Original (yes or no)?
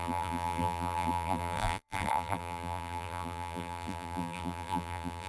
no